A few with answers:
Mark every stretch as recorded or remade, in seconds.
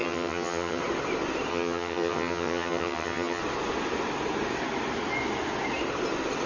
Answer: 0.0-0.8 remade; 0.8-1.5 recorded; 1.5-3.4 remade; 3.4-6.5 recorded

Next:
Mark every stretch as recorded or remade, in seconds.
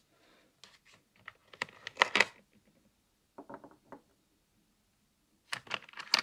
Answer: 0.0-6.2 recorded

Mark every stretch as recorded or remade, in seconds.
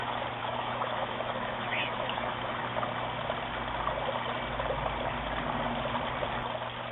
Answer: 0.0-0.4 recorded; 0.4-2.6 remade; 2.6-6.9 recorded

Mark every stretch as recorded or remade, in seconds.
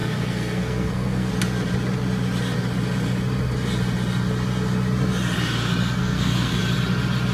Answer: 0.0-1.3 remade; 1.3-6.0 recorded; 6.0-6.6 remade; 6.6-7.3 recorded